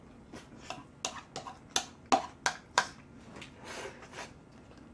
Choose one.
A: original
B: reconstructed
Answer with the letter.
A